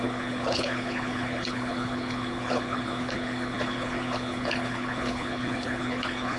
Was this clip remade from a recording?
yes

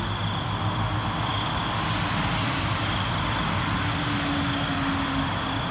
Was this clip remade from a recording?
no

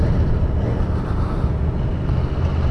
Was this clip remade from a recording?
no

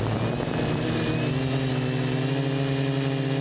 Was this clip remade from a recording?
no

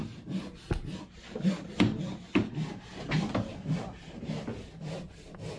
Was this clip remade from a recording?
no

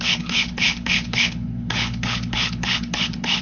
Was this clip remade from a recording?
yes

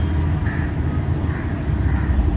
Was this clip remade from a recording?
no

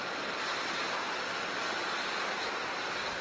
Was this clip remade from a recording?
no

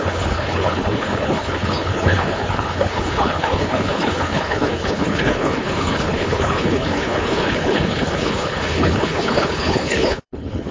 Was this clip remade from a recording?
yes